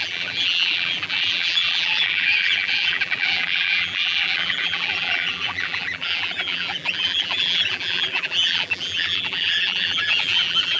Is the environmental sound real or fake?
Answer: fake